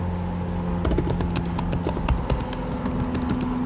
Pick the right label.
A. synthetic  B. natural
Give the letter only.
B